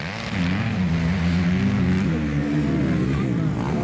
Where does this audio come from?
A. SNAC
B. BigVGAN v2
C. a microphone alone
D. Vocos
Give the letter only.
C